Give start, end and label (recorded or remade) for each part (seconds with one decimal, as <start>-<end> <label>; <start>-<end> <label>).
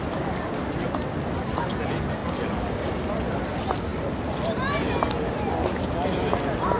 0.0-2.2 recorded; 2.2-2.7 remade; 2.7-3.9 recorded; 3.9-5.0 remade; 5.0-6.8 recorded